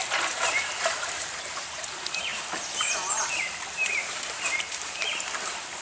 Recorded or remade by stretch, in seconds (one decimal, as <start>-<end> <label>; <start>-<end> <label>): 0.0-2.3 remade; 2.3-3.7 recorded; 3.7-5.8 remade